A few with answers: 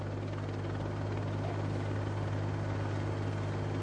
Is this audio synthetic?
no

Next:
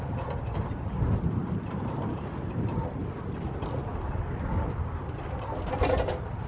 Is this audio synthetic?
no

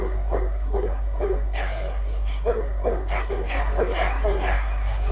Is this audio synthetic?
yes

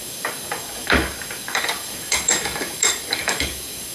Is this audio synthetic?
yes